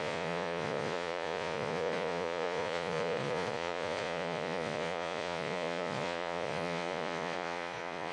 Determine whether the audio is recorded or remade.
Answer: remade